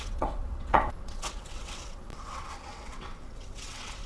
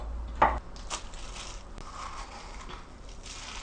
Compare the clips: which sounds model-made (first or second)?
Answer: first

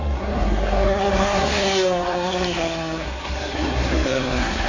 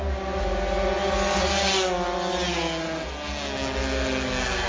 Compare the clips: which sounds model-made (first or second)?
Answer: first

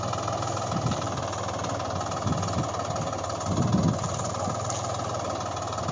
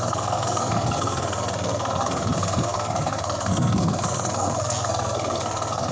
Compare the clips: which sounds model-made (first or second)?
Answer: second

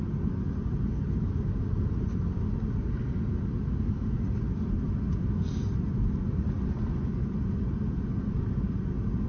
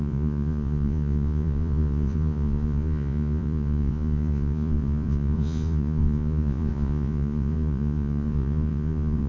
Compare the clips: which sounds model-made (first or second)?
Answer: second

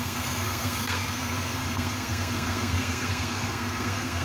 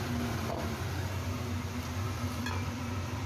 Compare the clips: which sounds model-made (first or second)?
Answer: first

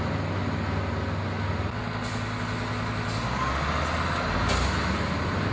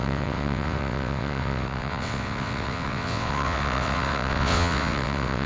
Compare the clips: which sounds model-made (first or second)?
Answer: second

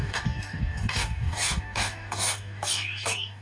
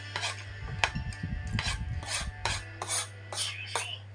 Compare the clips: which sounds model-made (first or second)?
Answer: first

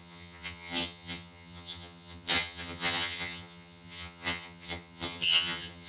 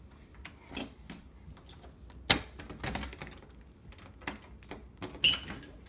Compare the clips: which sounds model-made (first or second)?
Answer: first